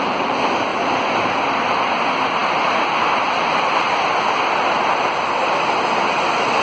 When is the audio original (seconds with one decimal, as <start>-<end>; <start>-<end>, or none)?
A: 0.0-6.6